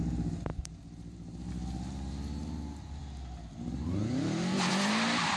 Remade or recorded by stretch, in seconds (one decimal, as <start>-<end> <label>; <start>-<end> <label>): 0.0-0.5 recorded; 0.5-1.5 remade; 1.5-5.4 recorded